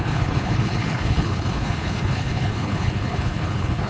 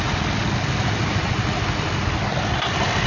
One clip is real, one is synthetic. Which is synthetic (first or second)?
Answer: first